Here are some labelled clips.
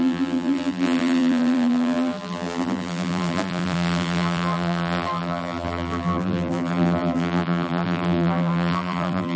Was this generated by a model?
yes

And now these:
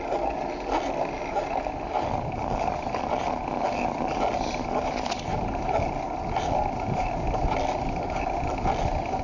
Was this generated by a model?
no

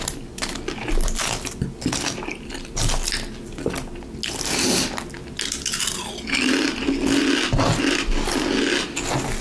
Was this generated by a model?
no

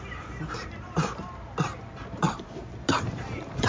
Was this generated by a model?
no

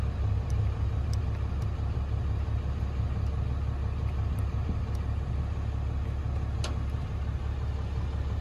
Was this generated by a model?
no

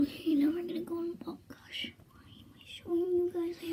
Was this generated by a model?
yes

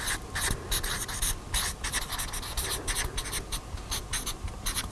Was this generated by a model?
no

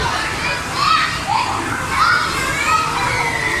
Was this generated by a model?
no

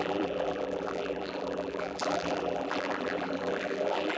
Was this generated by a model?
yes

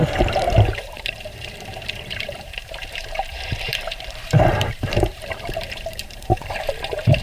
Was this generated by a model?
yes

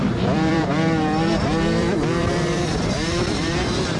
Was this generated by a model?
yes